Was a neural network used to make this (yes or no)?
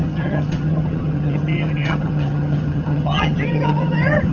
yes